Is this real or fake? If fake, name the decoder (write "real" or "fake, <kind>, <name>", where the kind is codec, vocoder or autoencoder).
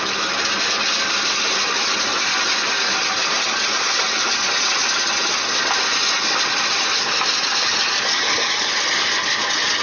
real